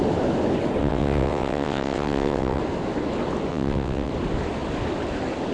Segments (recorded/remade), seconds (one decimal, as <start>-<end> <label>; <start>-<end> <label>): 0.0-0.8 recorded; 0.8-2.6 remade; 2.6-3.5 recorded; 3.5-4.1 remade; 4.1-5.5 recorded